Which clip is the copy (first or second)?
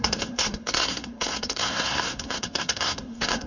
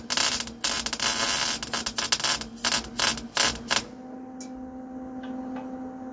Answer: first